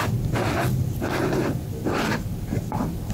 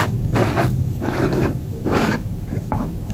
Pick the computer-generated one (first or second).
second